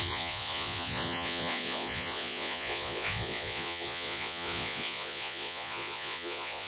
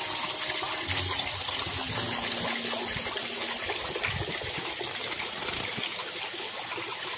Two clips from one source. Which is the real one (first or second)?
second